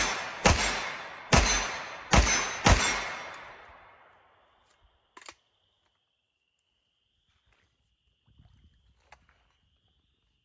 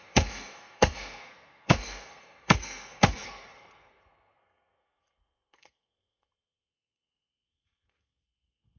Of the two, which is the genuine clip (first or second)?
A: first